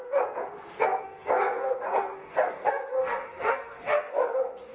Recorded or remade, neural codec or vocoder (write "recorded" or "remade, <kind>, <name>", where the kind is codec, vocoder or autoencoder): remade, codec, SNAC